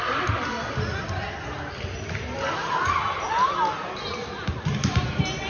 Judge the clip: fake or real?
real